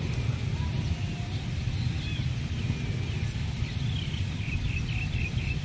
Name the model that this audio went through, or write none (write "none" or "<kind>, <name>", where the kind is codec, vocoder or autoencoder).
none